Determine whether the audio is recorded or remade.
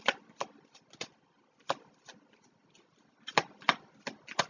recorded